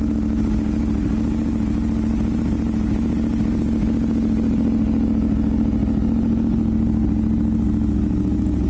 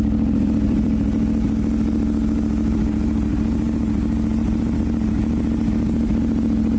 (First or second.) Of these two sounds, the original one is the first